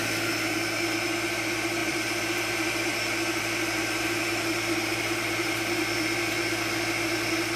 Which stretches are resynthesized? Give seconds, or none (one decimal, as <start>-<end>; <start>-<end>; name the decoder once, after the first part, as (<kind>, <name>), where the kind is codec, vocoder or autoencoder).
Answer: 1.8-2.5 (vocoder, BigVGAN v2); 2.9-4.4; 4.9-5.6